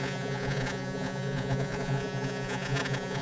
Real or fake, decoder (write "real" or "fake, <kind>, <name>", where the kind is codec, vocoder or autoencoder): fake, vocoder, Vocos